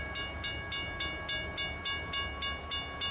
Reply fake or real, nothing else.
real